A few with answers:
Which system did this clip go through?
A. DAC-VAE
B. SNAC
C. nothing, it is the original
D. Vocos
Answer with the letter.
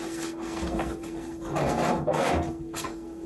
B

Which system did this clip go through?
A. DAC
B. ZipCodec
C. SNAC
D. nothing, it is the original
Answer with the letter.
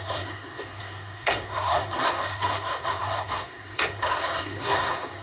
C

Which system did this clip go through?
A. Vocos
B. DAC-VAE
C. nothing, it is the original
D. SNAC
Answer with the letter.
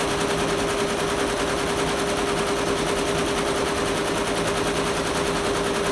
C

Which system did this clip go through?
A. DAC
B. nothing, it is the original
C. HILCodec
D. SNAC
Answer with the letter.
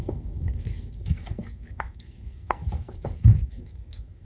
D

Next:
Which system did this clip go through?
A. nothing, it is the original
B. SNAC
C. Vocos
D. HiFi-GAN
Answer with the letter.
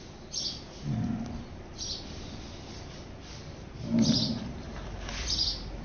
A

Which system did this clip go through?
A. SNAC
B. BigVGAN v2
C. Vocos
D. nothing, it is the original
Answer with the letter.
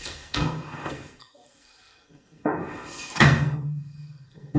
A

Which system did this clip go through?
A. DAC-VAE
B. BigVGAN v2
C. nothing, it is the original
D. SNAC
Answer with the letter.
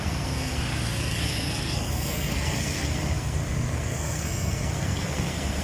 D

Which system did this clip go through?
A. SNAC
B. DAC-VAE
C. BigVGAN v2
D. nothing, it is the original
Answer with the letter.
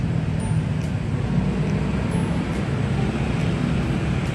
D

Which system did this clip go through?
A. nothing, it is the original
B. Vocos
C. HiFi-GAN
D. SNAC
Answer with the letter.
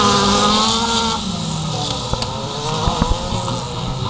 A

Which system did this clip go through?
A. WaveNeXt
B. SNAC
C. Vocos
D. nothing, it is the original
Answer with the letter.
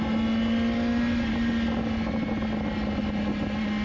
D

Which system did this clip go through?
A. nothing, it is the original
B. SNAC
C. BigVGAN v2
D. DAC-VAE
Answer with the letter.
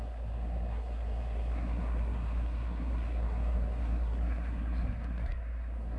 B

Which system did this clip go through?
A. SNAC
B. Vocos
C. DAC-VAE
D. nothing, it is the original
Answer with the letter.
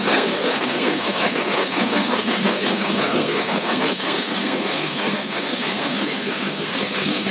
A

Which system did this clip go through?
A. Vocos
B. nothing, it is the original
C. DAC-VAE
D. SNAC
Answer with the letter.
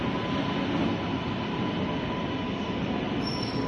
B